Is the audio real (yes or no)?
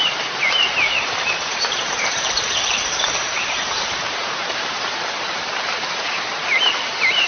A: no